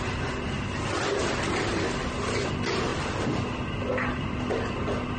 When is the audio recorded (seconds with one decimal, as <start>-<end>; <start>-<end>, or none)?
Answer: 0.0-5.2